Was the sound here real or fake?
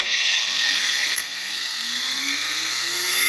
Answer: fake